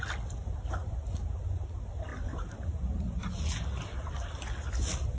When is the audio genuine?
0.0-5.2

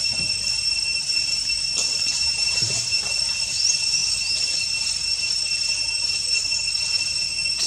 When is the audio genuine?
0.0-2.2; 3.0-7.7

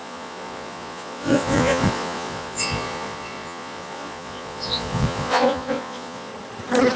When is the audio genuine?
6.3-7.0

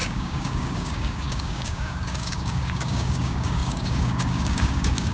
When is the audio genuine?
none

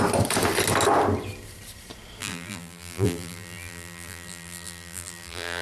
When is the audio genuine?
0.0-2.2

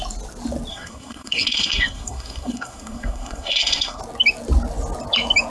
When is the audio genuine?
0.0-0.7; 4.0-5.5

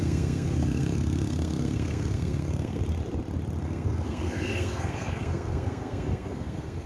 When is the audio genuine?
2.8-3.6